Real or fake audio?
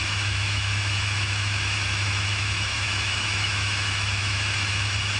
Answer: fake